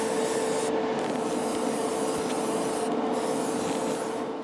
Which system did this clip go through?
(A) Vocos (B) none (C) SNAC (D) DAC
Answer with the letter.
B